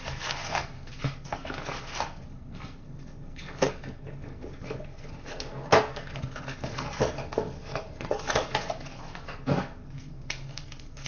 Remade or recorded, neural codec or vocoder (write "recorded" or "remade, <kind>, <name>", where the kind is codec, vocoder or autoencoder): remade, codec, SNAC